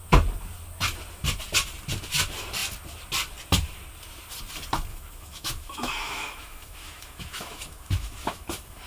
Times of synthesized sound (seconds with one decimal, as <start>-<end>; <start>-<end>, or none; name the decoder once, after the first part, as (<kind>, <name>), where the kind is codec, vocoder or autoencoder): 4.9-8.9 (autoencoder, DAC-VAE)